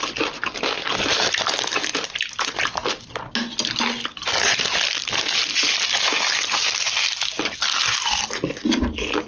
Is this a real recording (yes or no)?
yes